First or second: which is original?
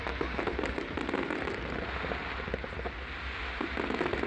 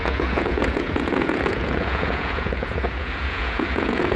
first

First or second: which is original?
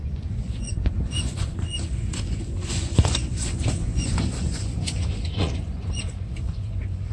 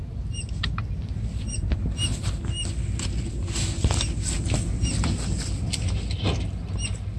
second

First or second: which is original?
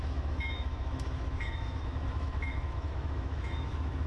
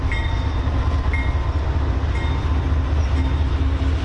second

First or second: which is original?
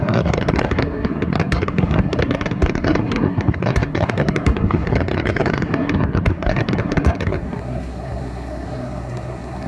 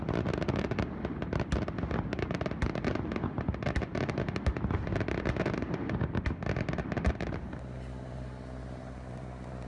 second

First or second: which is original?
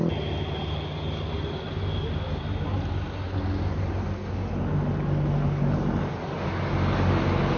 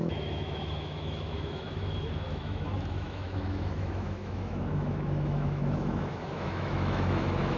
first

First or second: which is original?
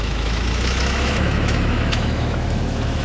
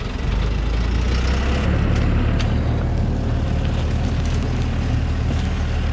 second